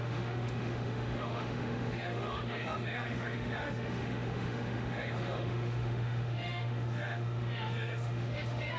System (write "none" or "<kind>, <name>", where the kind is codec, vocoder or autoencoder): autoencoder, DAC-VAE